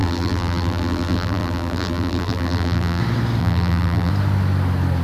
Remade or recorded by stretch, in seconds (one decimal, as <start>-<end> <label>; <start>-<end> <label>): 0.0-3.0 remade; 3.0-3.4 recorded; 3.4-4.1 remade; 4.1-5.0 recorded